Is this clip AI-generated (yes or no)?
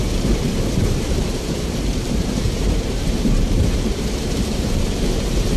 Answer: yes